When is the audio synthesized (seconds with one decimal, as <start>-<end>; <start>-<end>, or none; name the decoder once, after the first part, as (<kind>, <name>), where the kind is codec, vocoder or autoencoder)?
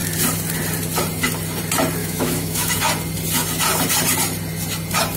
2.0-2.8 (autoencoder, DAC-VAE)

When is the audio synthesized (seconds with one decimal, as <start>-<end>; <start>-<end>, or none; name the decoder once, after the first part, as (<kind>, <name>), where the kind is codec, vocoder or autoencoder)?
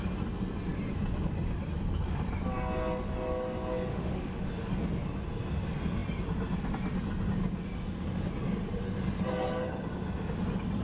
3.9-4.5 (autoencoder, DAC-VAE)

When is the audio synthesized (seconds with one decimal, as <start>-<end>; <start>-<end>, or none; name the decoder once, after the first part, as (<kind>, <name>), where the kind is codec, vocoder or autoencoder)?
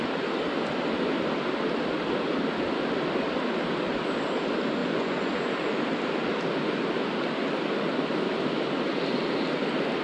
4.8-5.7 (vocoder, Vocos)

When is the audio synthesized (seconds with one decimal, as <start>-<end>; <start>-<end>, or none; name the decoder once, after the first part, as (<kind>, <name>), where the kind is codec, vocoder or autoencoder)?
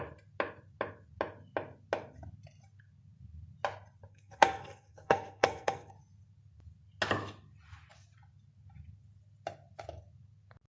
4.1-5.9 (codec, SNAC)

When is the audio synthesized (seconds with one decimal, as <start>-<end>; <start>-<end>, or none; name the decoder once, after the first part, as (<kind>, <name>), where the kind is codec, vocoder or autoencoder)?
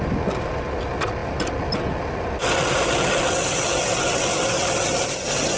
none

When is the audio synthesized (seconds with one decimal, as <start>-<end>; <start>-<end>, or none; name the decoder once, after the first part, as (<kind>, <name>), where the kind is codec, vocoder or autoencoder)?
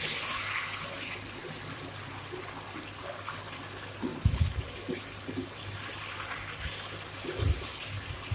none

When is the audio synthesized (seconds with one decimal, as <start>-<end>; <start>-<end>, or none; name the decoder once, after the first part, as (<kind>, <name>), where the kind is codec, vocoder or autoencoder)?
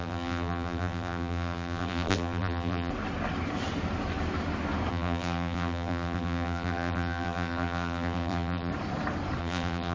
0.0-2.9 (vocoder, BigVGAN v2); 4.9-8.7; 9.4-9.9